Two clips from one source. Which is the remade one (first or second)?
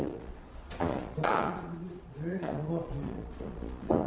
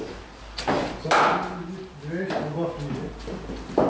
first